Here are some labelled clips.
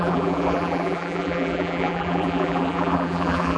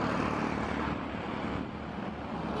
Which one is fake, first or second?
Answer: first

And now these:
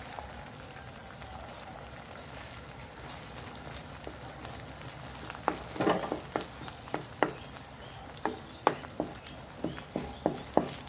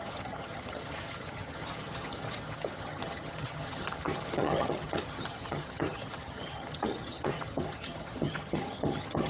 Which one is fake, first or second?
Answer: second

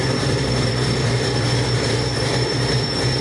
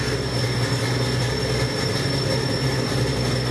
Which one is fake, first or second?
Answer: first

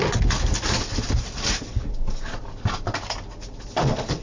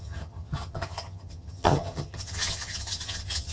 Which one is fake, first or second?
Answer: second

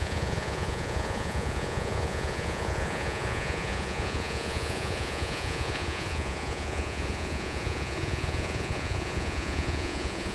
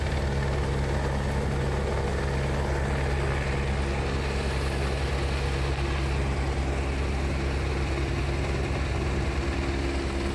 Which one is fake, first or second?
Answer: first